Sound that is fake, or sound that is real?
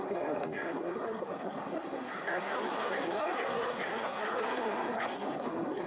fake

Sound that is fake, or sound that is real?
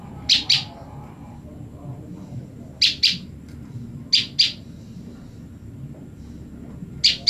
real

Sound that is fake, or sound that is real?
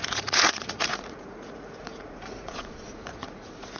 fake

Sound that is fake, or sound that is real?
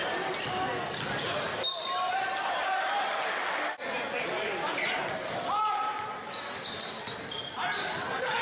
real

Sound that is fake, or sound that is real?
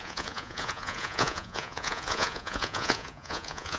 fake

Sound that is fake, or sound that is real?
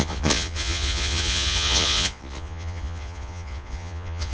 fake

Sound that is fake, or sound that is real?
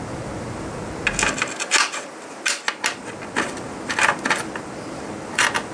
real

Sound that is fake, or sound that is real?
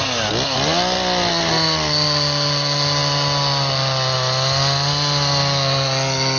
real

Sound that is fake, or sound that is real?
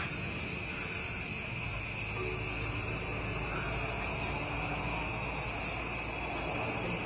real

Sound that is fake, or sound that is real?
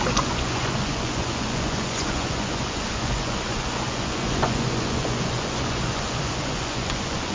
fake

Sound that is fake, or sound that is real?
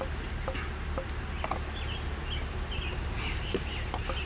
real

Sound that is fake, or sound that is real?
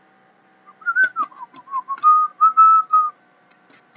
real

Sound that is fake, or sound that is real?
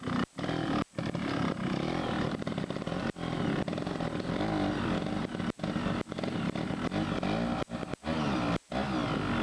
real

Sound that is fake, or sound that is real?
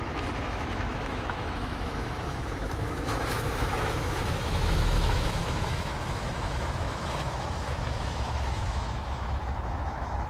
fake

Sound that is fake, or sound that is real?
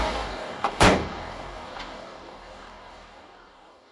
fake